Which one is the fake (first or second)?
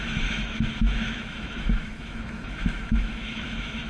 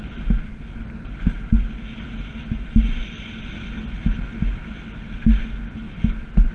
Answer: first